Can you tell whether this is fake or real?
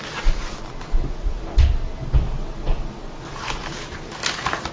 real